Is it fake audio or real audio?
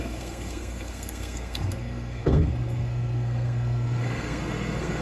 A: fake